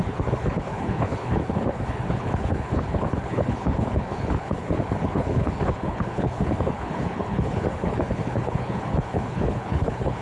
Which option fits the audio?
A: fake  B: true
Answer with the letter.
A